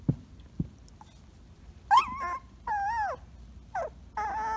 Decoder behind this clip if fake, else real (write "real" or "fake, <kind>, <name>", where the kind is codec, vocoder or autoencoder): real